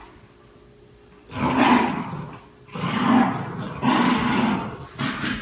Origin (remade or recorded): recorded